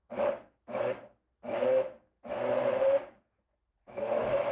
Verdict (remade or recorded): remade